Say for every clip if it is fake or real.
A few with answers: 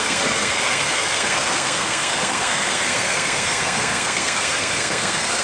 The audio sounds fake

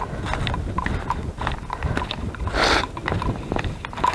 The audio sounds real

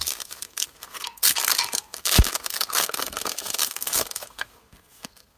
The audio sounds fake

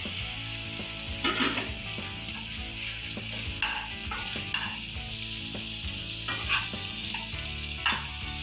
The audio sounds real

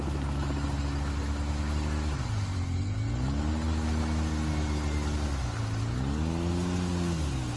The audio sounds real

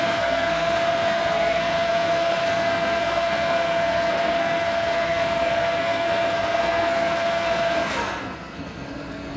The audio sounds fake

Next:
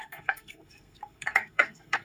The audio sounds fake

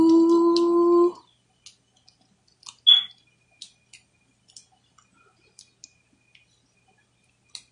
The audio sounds real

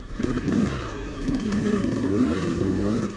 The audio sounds fake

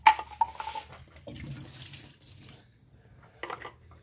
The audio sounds real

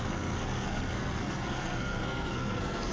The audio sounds fake